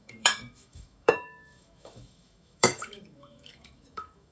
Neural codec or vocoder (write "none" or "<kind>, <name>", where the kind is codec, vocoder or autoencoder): autoencoder, DAC-VAE